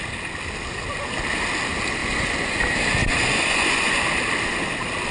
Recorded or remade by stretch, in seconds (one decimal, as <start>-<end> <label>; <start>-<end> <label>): 0.0-2.0 recorded; 2.0-2.6 remade; 2.6-3.0 recorded; 3.0-4.0 remade; 4.0-5.1 recorded